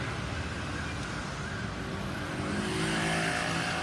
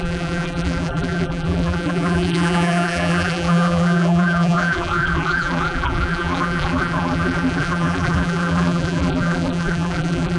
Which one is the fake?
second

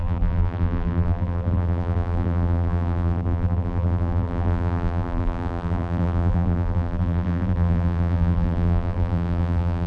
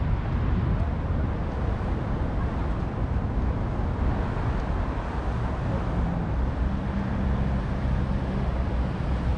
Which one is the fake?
first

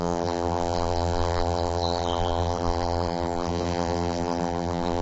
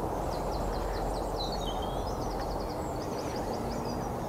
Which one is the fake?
first